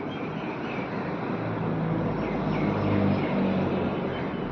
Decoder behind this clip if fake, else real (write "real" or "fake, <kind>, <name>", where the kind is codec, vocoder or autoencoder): real